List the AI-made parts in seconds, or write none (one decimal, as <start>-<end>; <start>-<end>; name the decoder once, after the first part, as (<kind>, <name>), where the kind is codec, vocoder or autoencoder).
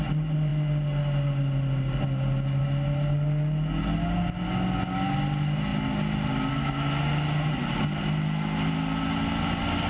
none